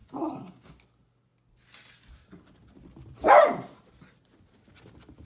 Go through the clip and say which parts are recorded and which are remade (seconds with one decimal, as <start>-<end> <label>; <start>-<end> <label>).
0.0-0.7 remade; 0.7-5.3 recorded